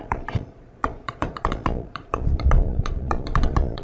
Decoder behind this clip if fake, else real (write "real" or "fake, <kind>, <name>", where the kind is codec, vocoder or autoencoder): fake, vocoder, Vocos